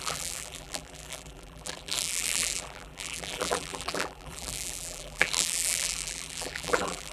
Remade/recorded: remade